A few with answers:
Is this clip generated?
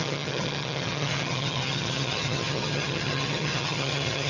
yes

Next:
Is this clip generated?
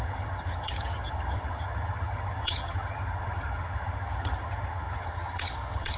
yes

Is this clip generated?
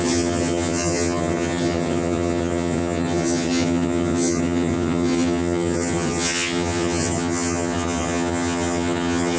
yes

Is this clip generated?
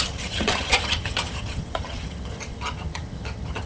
yes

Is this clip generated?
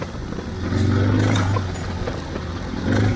no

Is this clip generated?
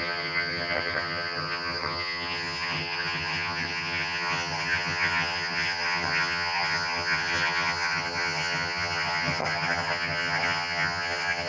yes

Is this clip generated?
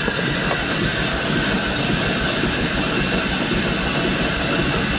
no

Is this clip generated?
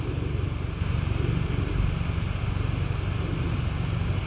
no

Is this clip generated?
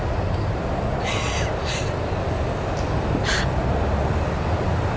no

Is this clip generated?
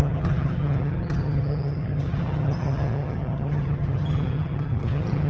yes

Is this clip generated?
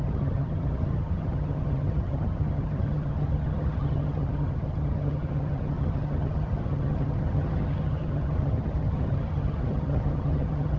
yes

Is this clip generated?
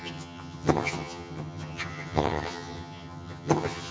yes